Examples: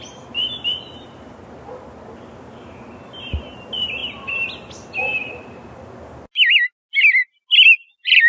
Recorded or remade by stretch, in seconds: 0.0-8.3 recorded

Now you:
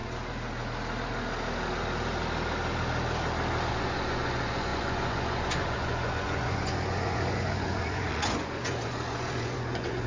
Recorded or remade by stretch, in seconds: 0.0-3.7 recorded; 3.7-10.1 remade

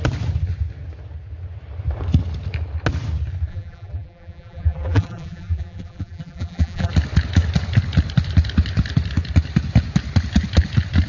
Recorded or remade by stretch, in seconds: 0.0-3.5 recorded; 3.5-6.9 remade; 6.9-11.1 recorded

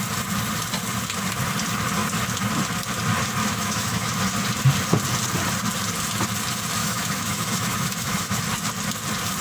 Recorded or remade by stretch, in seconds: 0.0-3.4 recorded; 3.4-4.2 remade; 4.2-6.8 recorded; 6.8-8.4 remade; 8.4-9.4 recorded

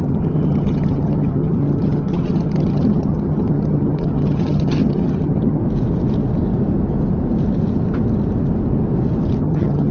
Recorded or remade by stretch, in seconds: 0.0-5.6 remade; 5.6-9.4 recorded; 9.4-9.9 remade

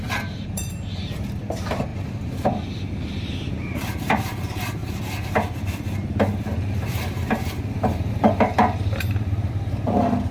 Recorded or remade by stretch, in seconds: 0.0-1.9 remade; 1.9-2.9 recorded; 2.9-4.8 remade; 4.8-8.1 recorded; 8.1-10.3 remade

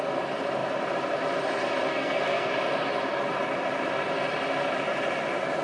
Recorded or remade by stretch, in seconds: 0.0-1.9 recorded; 1.9-2.5 remade; 2.5-5.6 recorded